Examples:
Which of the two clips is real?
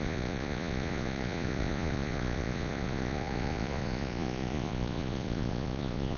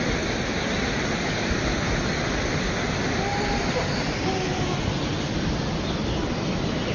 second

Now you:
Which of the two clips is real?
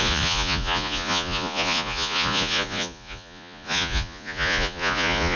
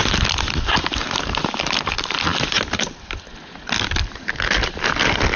second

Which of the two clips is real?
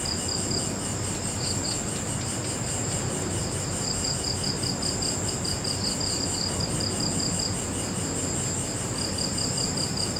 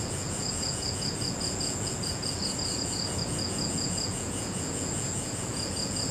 first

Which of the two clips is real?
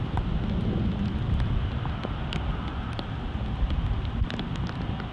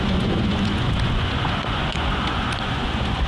first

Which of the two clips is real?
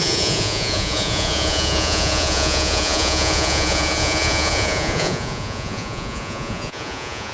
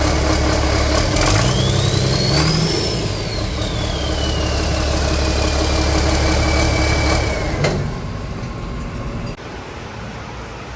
second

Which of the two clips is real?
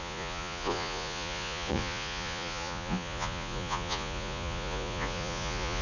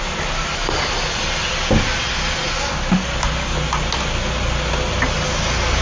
second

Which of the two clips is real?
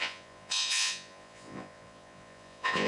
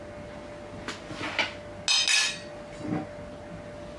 second